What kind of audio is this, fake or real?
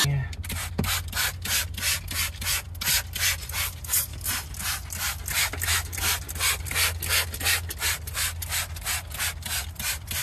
real